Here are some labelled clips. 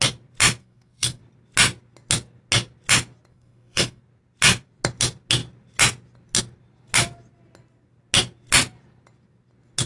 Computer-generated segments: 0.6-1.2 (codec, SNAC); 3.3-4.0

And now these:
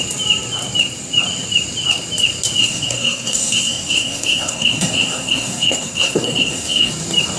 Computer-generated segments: 2.6-6.9 (codec, SNAC)

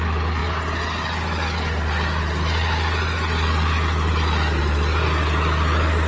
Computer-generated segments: none

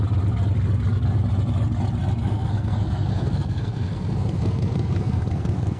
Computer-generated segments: 2.2-5.8 (codec, SNAC)

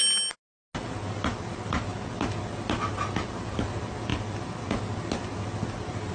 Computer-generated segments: none

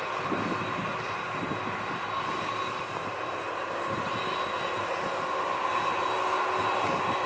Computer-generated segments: none